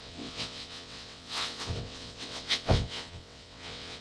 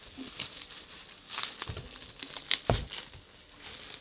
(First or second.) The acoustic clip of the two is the second